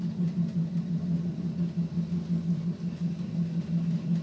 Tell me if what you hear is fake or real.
real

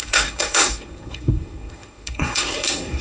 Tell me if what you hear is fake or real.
fake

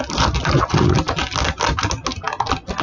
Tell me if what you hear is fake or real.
real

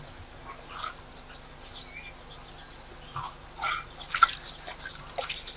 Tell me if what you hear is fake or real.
real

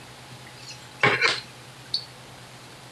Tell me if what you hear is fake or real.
real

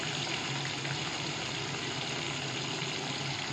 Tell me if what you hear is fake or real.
real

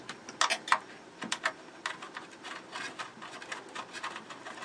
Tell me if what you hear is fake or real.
real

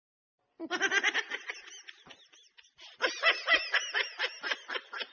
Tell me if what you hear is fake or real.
real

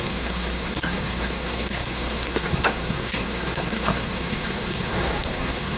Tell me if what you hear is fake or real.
fake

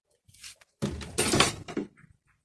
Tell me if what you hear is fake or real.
real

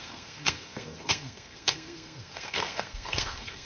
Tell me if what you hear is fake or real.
fake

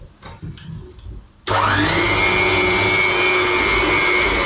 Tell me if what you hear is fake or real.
real